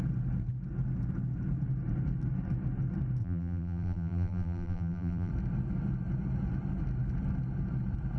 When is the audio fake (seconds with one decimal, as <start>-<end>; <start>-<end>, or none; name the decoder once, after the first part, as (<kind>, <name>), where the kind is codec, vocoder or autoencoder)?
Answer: 3.2-5.3 (vocoder, BigVGAN v2)